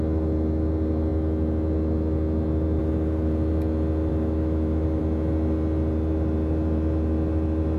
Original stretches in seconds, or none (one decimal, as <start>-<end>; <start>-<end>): 0.0-4.1; 5.0-7.8